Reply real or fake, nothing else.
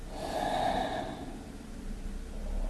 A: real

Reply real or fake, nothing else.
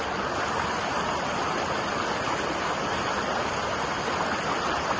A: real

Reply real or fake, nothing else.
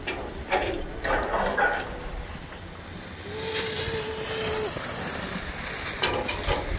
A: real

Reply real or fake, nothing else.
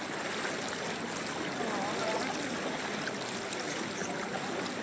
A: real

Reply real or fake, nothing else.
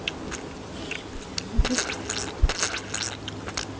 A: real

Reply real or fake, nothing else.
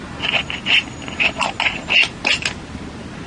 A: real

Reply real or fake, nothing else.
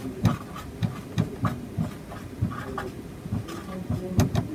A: real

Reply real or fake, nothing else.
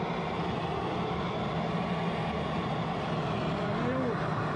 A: real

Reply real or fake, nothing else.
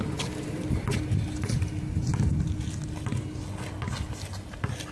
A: real